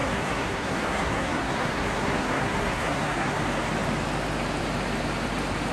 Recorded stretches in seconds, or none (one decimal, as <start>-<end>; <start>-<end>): 3.4-5.7